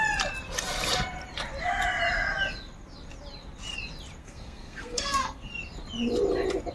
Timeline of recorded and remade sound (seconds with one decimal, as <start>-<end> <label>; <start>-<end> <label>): 0.0-4.2 recorded; 4.2-5.5 remade; 5.5-6.7 recorded